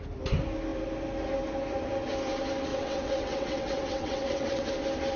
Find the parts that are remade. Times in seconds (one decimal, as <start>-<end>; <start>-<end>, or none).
2.7-4.7